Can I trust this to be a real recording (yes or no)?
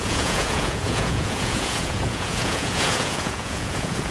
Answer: no